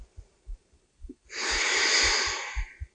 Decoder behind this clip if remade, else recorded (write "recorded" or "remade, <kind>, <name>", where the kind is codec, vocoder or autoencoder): recorded